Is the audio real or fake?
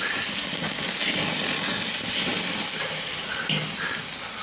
real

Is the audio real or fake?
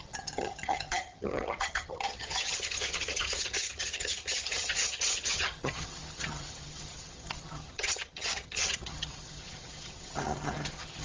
fake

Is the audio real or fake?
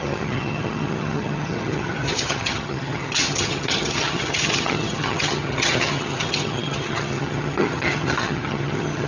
fake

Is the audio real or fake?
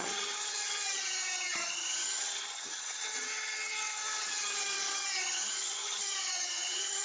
fake